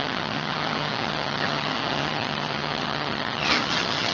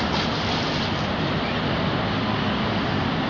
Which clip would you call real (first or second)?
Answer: second